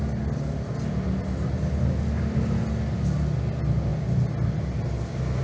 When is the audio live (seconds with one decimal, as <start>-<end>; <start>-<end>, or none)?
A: 0.0-5.4